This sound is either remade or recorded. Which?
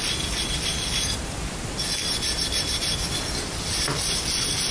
recorded